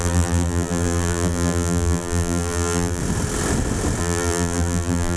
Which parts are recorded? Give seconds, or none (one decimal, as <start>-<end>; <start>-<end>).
3.0-4.0